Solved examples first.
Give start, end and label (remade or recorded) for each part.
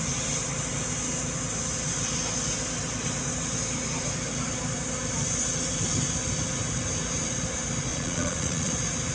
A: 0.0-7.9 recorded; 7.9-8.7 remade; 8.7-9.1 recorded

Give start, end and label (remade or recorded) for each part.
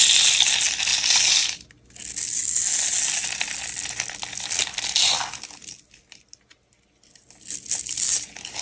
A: 0.0-8.6 recorded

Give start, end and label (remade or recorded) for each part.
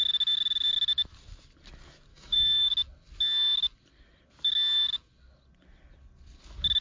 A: 0.0-2.1 recorded; 2.1-2.7 remade; 2.7-6.8 recorded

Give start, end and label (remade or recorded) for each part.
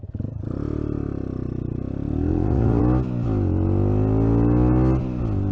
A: 0.0-2.3 recorded; 2.3-2.8 remade; 2.8-5.5 recorded